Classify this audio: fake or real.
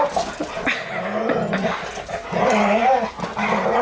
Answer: real